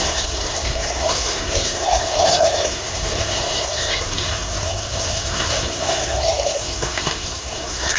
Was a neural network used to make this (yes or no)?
yes